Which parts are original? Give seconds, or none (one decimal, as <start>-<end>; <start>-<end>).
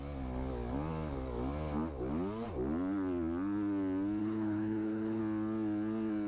0.0-4.2; 5.2-6.3